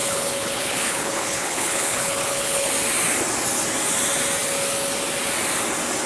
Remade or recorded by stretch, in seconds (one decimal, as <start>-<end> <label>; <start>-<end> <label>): 0.0-2.7 remade; 2.7-6.1 recorded